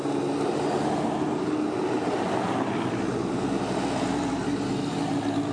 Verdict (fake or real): real